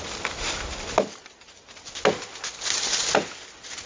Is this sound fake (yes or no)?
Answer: no